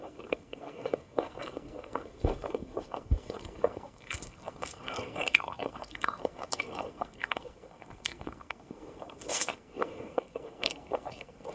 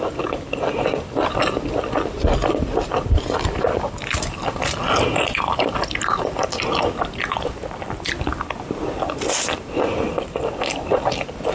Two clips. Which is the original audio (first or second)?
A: second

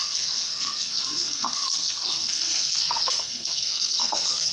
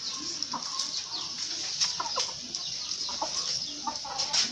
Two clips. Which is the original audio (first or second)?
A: second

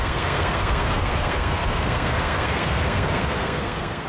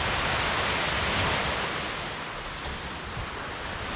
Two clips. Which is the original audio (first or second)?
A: second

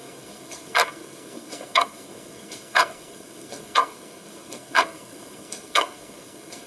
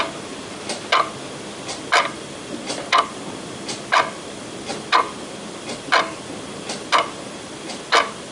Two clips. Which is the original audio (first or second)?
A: second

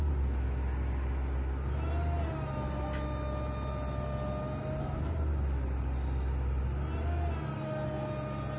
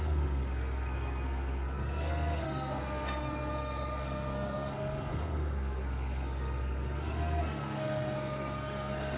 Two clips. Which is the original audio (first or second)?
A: first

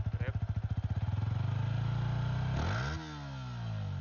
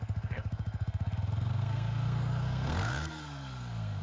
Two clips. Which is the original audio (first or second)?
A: first